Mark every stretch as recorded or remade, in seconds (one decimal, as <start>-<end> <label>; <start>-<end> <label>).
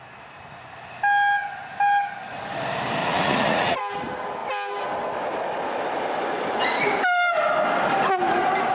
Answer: 0.0-3.0 recorded; 3.0-3.8 remade; 3.8-8.7 recorded